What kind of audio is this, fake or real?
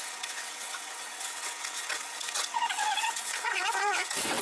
fake